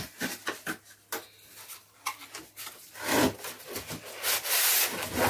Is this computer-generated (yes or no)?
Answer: no